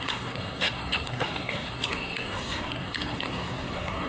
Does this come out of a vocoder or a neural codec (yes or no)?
yes